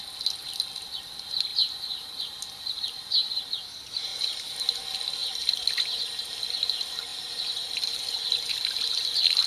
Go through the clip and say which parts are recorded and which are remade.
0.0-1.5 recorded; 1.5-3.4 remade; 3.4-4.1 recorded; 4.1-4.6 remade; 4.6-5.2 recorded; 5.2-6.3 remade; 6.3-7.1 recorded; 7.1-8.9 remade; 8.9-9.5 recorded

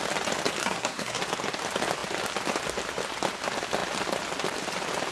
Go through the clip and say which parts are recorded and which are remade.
0.0-0.6 recorded; 0.6-1.2 remade; 1.2-5.1 recorded

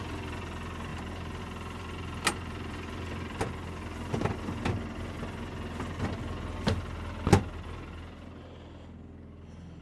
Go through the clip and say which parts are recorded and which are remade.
0.0-9.8 recorded

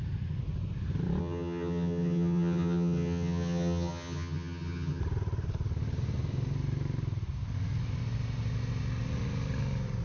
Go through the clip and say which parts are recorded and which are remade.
0.0-1.2 recorded; 1.2-5.0 remade; 5.0-10.0 recorded

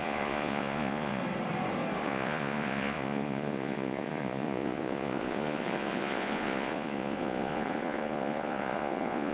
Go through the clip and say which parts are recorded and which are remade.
0.0-1.2 remade; 1.2-2.0 recorded; 2.0-9.3 remade

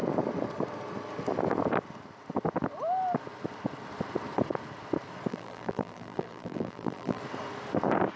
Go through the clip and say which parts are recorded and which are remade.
0.0-5.3 recorded; 5.3-7.2 remade; 7.2-8.2 recorded